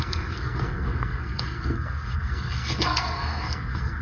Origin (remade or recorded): remade